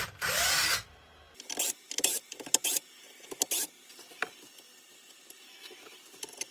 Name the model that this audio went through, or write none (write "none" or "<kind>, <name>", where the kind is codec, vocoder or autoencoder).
none